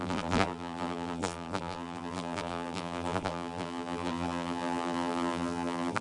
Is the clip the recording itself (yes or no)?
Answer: no